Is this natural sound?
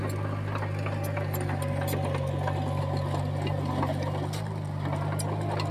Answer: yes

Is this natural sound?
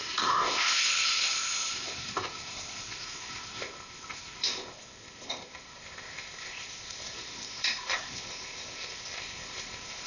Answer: no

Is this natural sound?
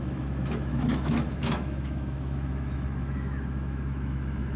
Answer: no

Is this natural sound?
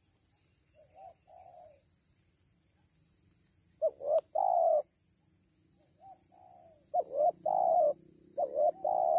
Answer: yes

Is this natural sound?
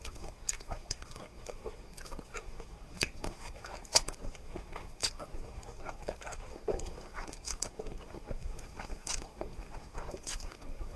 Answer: no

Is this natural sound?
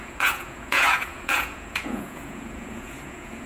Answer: no